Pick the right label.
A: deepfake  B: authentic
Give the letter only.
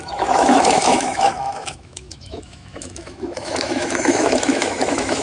A